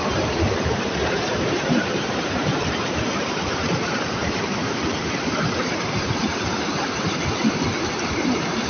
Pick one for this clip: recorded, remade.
remade